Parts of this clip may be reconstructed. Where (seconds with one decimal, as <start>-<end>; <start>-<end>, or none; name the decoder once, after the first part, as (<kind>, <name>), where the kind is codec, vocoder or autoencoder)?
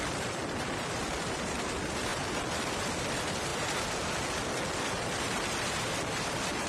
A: 0.0-2.1 (vocoder, BigVGAN v2); 2.9-3.5; 6.1-6.7